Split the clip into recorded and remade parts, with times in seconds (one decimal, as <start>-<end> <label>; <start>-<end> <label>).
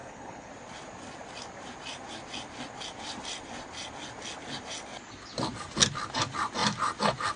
0.0-0.5 remade; 0.5-7.4 recorded